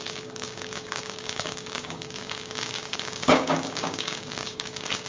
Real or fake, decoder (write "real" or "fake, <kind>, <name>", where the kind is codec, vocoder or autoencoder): fake, codec, DAC